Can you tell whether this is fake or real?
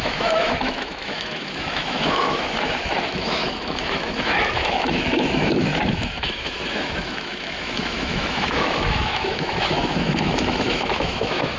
fake